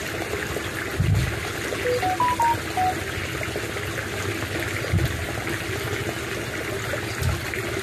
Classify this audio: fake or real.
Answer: real